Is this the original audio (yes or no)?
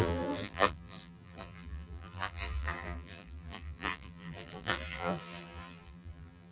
no